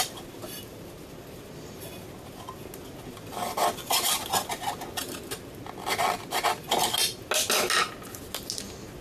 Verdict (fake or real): real